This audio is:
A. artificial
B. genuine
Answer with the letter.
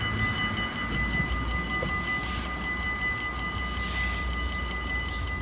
B